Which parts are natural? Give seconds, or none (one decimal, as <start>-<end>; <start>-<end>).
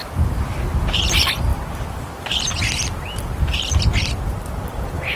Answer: 0.6-1.5; 4.6-5.2